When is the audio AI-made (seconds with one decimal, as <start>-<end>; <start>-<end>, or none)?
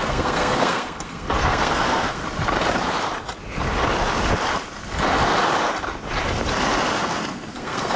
0.0-2.2; 7.0-8.0